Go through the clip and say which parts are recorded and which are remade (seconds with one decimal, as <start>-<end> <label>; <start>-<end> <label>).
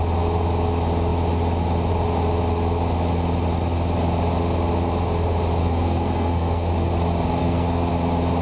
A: 0.0-5.6 recorded; 5.6-6.7 remade; 6.7-7.4 recorded; 7.4-7.9 remade; 7.9-8.4 recorded